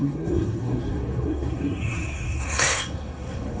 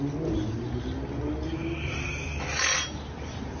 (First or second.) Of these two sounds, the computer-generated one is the first